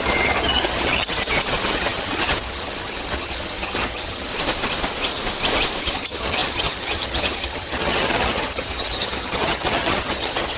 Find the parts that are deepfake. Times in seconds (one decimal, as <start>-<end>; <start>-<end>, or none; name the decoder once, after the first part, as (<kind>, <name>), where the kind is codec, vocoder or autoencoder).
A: 0.0-4.3 (vocoder, HiFi-GAN); 5.8-10.6